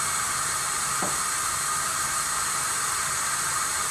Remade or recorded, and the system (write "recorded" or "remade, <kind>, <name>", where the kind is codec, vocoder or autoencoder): recorded